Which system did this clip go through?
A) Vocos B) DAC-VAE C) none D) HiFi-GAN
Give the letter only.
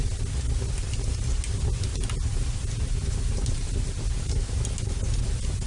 C